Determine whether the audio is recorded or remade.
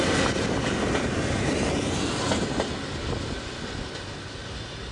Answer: recorded